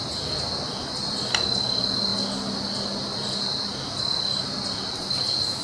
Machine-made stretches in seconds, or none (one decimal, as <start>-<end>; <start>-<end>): none